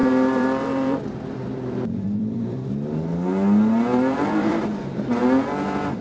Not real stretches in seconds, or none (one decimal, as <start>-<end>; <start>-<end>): 0.0-2.7; 3.9-5.2